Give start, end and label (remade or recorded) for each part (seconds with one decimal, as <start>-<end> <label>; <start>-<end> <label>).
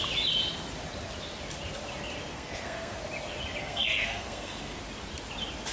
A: 0.0-2.3 recorded; 2.3-3.0 remade; 3.0-3.6 recorded; 3.6-4.8 remade; 4.8-5.7 recorded